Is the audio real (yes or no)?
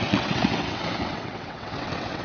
no